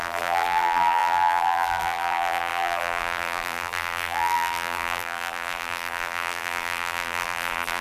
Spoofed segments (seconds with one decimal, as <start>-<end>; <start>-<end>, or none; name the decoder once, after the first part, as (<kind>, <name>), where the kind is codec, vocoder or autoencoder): 0.0-7.8 (vocoder, BigVGAN v2)